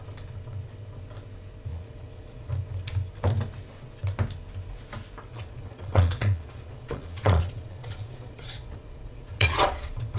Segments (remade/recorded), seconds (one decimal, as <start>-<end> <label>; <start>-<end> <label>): 0.0-1.7 recorded; 1.7-2.5 remade; 2.5-5.3 recorded; 5.3-10.2 remade